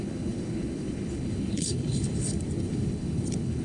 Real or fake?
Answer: fake